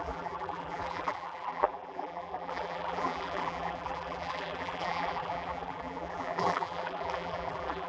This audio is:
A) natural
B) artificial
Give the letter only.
B